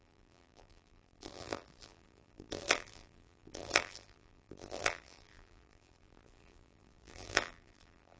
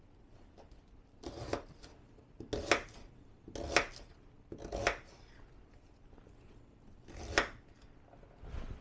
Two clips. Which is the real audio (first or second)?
second